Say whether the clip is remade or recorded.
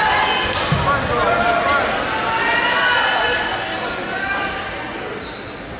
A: recorded